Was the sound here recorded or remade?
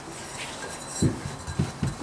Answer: recorded